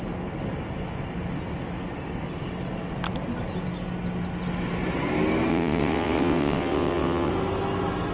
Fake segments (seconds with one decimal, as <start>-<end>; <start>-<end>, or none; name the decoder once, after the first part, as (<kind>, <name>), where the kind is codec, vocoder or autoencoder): 5.5-7.3 (vocoder, WaveNeXt)